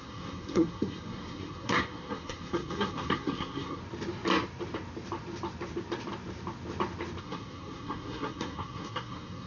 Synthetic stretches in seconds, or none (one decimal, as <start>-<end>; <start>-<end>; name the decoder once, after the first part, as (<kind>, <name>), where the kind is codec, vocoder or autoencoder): 0.0-3.8 (codec, SNAC); 7.2-9.5